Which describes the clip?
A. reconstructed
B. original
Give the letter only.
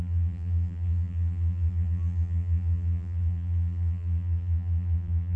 A